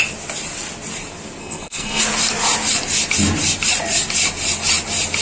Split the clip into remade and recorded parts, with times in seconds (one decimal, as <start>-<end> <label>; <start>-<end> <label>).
0.0-1.4 recorded; 1.4-2.0 remade; 2.0-5.2 recorded